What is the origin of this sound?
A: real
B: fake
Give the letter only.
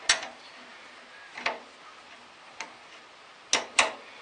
A